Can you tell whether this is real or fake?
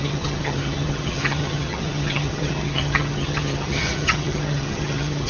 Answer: fake